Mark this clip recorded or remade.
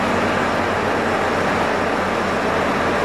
recorded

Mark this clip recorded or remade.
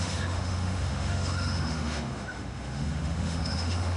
remade